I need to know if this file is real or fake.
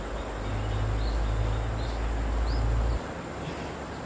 real